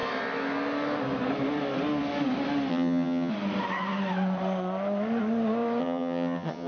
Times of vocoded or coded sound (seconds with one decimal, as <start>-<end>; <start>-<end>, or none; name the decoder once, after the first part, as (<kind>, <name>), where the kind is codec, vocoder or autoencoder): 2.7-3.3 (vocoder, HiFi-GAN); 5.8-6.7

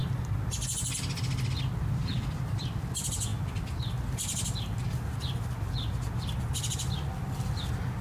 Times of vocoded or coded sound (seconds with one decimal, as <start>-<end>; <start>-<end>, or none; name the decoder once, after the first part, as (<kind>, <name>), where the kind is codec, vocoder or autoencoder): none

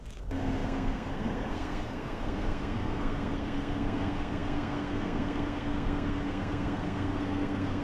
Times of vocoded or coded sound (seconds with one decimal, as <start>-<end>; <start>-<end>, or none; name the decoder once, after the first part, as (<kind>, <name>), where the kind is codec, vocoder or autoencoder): 0.0-7.8 (codec, SNAC)

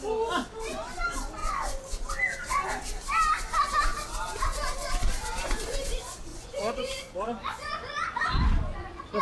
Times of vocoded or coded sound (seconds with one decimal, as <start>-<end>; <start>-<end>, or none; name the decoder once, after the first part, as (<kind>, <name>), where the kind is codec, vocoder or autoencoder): 1.4-2.1 (vocoder, Vocos); 6.3-9.2